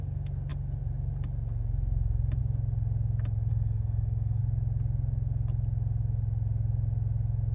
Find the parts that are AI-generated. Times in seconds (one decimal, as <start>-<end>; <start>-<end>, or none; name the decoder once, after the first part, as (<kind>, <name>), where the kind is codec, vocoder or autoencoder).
3.5-4.4 (codec, SNAC)